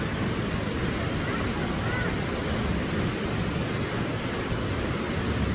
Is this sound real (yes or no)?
yes